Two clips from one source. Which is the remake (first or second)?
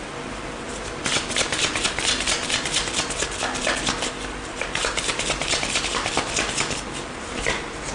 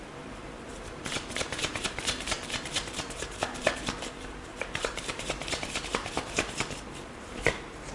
second